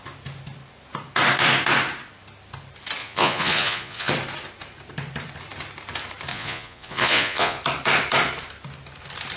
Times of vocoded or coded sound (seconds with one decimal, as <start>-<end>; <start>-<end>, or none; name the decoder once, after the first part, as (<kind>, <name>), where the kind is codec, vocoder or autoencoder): 3.0-4.1 (vocoder, Vocos); 6.3-7.6